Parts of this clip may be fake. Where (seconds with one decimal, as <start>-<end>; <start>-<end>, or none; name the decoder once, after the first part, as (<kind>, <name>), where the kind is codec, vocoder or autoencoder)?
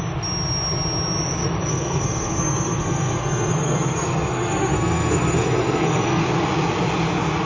1.7-6.2 (codec, SNAC)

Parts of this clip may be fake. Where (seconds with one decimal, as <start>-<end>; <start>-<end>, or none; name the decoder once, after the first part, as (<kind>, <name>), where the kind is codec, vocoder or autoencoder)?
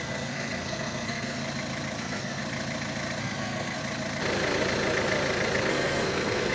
0.0-1.4 (codec, SNAC); 2.0-2.4; 3.2-3.8; 5.7-6.5